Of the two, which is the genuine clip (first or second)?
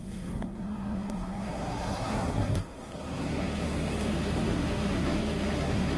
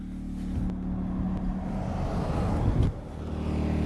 second